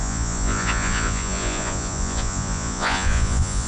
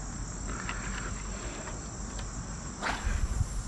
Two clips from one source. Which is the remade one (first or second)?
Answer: first